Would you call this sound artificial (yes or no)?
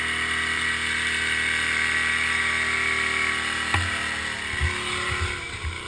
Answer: no